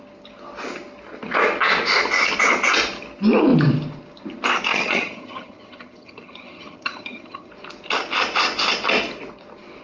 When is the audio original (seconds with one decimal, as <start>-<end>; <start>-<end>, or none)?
0.0-4.7; 7.5-9.8